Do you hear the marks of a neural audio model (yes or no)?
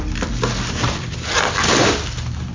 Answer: no